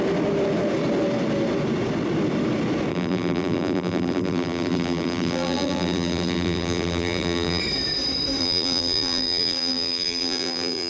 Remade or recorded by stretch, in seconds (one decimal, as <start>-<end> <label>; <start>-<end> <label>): 0.0-2.9 recorded; 2.9-7.6 remade; 7.6-8.4 recorded; 8.4-10.9 remade